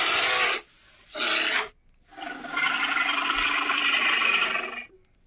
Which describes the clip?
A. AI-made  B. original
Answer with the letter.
B